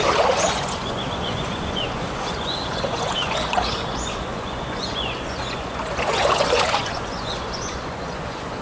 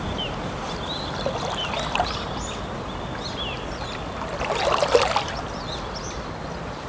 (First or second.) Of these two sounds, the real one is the second